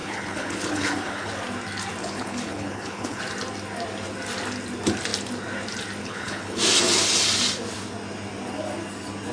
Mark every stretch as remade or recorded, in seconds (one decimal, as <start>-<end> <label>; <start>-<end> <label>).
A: 0.0-1.3 remade; 1.3-2.0 recorded; 2.0-3.2 remade; 3.2-6.0 recorded; 6.0-6.6 remade; 6.6-9.3 recorded